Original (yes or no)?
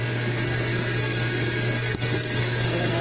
no